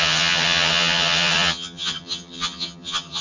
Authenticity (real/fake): fake